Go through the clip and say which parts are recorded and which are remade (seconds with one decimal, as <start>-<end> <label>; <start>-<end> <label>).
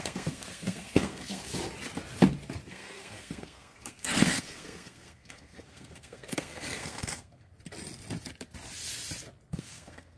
0.0-1.5 remade; 1.5-2.7 recorded; 2.7-7.5 remade; 7.5-9.5 recorded; 9.5-10.2 remade